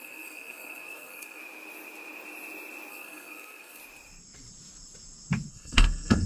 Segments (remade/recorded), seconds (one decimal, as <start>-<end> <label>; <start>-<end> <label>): 0.0-1.4 remade; 1.4-2.9 recorded; 2.9-3.8 remade; 3.8-5.5 recorded; 5.5-6.3 remade